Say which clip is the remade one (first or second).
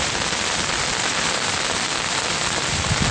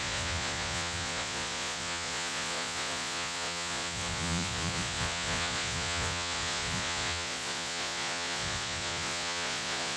second